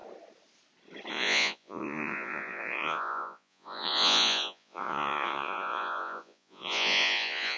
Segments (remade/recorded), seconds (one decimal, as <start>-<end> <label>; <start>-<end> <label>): 0.0-1.1 recorded; 1.1-7.6 remade

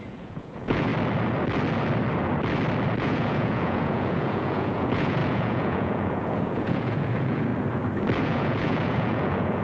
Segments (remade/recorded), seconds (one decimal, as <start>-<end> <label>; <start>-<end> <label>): 0.0-0.9 remade; 0.9-3.0 recorded; 3.0-7.5 remade; 7.5-8.2 recorded; 8.2-9.6 remade

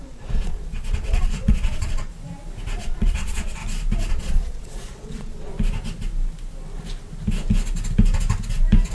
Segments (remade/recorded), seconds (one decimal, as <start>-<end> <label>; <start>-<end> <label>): 0.0-2.1 remade; 2.1-2.8 recorded; 2.8-3.6 remade; 3.6-4.1 recorded; 4.1-5.5 remade; 5.5-8.9 recorded

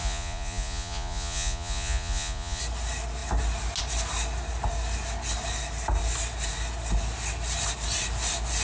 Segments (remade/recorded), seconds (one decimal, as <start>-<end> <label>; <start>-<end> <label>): 0.0-2.6 remade; 2.6-8.6 recorded

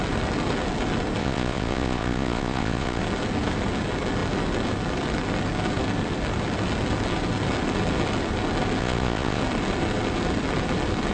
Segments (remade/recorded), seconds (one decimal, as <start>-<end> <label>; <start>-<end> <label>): 0.0-1.2 recorded; 1.2-3.0 remade; 3.0-8.8 recorded; 8.8-9.4 remade; 9.4-11.1 recorded

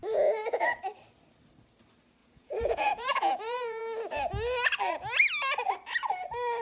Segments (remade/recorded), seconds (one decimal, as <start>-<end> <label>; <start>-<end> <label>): 0.0-0.8 remade; 0.8-2.2 recorded; 2.2-3.8 remade; 3.8-6.6 recorded

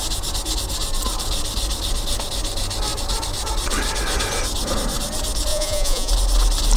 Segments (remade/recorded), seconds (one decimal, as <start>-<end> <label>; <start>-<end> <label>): 0.0-5.5 recorded; 5.5-6.1 remade; 6.1-6.8 recorded

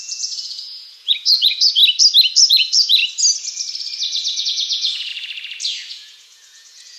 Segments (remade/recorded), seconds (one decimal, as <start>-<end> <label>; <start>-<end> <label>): 0.0-1.8 remade; 1.8-2.5 recorded; 2.5-3.0 remade; 3.0-4.4 recorded; 4.4-5.1 remade; 5.1-5.9 recorded; 5.9-7.0 remade